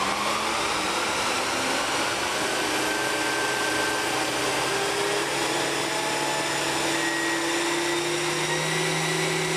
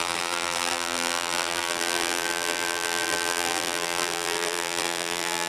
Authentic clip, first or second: first